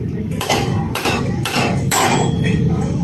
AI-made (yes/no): yes